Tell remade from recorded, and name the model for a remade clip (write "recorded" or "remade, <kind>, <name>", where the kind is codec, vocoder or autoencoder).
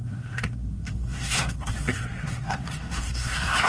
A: remade, codec, SNAC